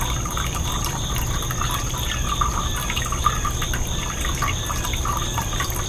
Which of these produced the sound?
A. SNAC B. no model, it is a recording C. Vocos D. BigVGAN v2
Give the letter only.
B